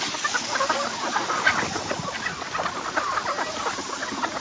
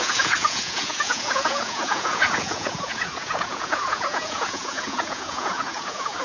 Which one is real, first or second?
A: first